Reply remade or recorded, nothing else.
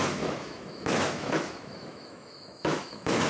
remade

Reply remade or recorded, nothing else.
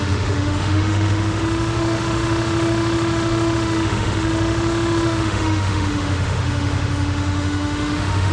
remade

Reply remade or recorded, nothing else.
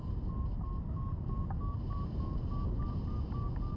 recorded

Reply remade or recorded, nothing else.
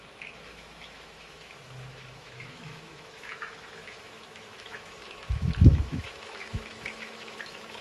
remade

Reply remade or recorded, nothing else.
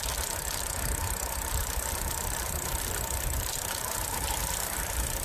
recorded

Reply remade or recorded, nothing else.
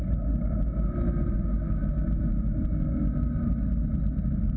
recorded